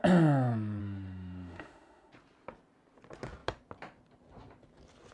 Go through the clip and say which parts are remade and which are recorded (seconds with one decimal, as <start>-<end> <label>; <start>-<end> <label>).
0.0-0.8 recorded; 0.8-2.1 remade; 2.1-5.1 recorded